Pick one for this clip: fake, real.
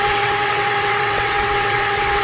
fake